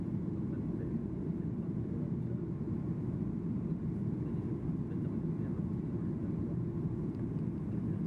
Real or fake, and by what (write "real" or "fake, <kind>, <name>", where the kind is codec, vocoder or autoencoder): real